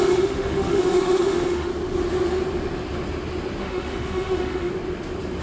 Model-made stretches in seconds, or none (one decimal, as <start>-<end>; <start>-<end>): 0.0-1.7; 3.6-4.7